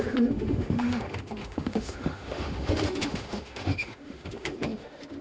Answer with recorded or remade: remade